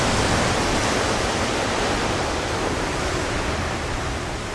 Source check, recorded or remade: recorded